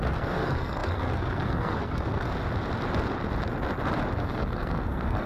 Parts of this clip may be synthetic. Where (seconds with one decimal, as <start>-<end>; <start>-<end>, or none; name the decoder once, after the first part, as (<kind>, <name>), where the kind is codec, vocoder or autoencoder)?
0.0-2.3 (codec, SNAC); 4.2-5.3